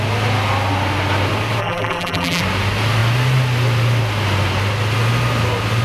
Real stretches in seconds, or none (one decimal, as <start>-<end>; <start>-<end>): 0.0-1.6; 2.4-5.8